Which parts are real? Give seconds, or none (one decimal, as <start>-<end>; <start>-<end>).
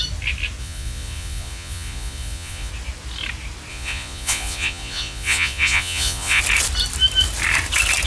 0.0-0.6; 2.7-3.7; 6.4-8.1